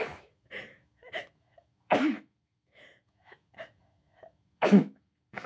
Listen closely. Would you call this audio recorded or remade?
remade